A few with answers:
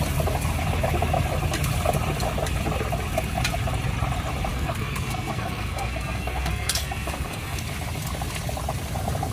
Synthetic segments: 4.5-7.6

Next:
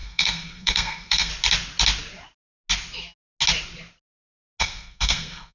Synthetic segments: 0.0-1.3; 4.6-5.5